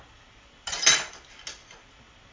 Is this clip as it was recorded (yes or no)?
yes